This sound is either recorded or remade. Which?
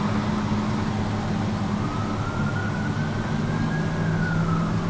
recorded